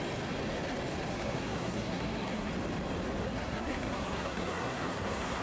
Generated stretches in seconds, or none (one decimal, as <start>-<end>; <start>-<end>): 1.1-2.5; 3.2-5.4